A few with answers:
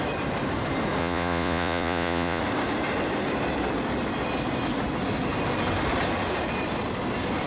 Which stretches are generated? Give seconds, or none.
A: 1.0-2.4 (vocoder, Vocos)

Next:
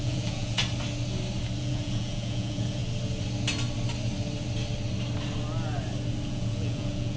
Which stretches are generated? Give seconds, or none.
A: 0.0-0.6 (vocoder, Vocos); 1.6-2.8; 6.3-7.2

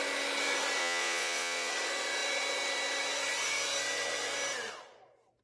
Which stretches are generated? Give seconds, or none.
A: 0.8-1.7 (vocoder, Vocos)

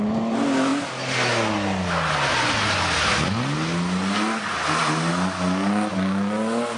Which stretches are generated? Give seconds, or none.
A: none

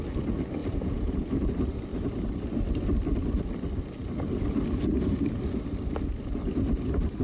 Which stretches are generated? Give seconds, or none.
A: 0.6-1.1 (vocoder, Vocos)

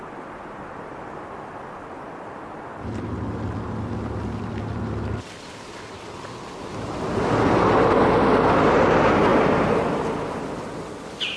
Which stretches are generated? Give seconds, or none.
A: none

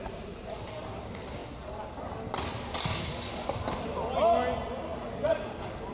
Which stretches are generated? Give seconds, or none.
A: 0.0-0.6 (vocoder, Vocos); 4.9-5.5

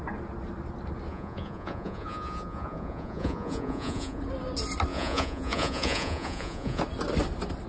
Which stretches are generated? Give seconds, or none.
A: 1.1-4.2 (vocoder, Vocos); 4.9-6.8